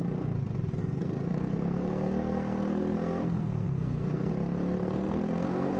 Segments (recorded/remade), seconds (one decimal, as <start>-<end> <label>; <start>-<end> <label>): 0.0-0.8 recorded; 0.8-4.3 remade; 4.3-4.8 recorded; 4.8-5.8 remade